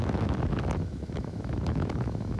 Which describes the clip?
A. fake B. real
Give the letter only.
A